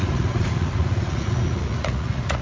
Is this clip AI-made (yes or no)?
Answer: yes